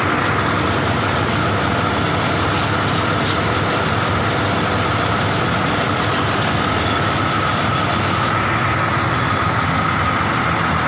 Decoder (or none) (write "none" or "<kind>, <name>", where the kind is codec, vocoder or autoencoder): none